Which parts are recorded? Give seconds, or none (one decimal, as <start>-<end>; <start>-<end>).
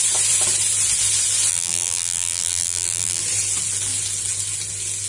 0.0-1.5; 3.2-5.1